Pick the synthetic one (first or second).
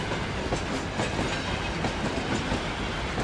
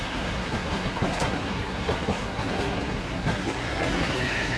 second